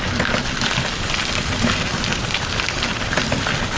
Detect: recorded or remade remade